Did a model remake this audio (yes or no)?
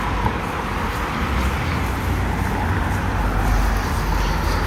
no